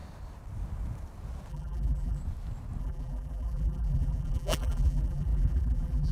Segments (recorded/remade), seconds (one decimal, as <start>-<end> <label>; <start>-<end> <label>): 0.0-1.5 recorded; 1.5-2.2 remade; 2.2-2.8 recorded; 2.8-6.1 remade